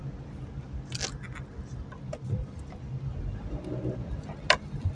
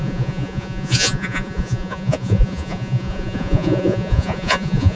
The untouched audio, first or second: first